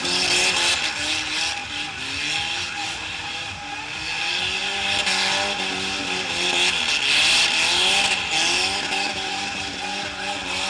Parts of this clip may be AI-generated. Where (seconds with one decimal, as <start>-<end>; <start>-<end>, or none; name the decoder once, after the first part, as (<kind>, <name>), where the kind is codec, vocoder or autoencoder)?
none